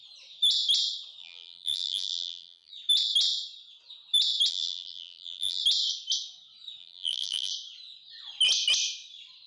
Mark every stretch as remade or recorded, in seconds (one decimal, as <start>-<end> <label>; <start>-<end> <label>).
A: 0.0-1.2 recorded; 1.2-2.7 remade; 2.7-4.5 recorded; 4.5-5.6 remade; 5.6-6.8 recorded; 6.8-7.5 remade; 7.5-9.5 recorded